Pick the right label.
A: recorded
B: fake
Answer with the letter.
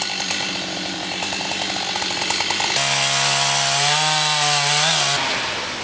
A